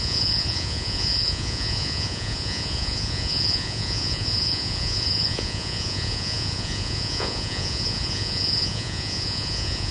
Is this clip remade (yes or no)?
yes